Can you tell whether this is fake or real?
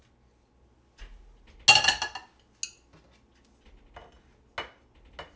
real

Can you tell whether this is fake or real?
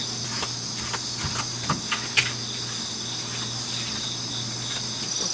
real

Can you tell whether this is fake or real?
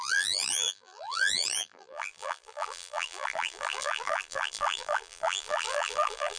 fake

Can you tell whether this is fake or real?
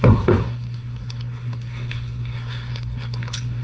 fake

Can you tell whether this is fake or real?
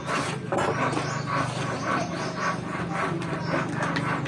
real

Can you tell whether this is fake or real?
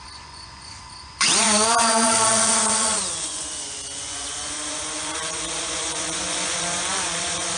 fake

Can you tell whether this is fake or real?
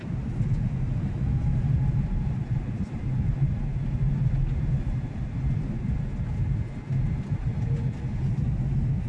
real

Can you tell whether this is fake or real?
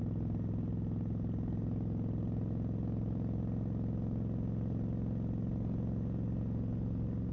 real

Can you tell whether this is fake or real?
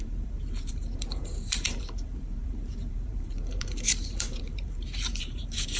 fake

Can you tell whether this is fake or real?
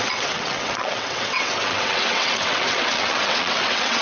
fake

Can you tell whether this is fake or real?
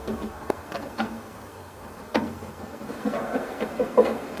fake